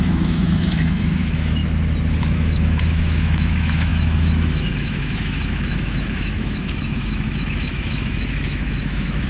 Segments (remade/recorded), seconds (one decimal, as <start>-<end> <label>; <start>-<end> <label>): 0.0-1.6 remade; 1.6-2.2 recorded; 2.2-9.3 remade